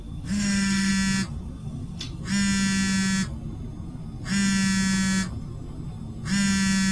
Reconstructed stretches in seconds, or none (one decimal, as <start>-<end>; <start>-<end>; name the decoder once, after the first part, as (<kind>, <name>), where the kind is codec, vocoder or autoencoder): 0.0-0.9 (autoencoder, DAC-VAE); 1.6-2.2